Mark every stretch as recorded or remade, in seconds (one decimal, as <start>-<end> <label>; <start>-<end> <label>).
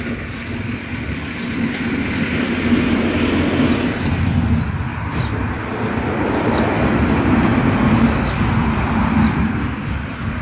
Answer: 0.0-1.4 remade; 1.4-6.4 recorded; 6.4-7.5 remade; 7.5-8.3 recorded; 8.3-10.4 remade